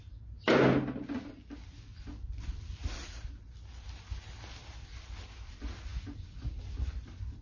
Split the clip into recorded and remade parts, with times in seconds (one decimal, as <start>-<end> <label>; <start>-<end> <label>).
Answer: 0.0-7.4 recorded